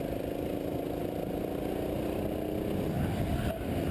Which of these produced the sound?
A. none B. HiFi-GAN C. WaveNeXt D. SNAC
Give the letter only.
A